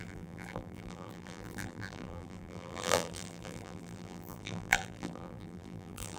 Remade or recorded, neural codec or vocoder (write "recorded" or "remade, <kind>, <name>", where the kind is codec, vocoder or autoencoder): remade, vocoder, BigVGAN v2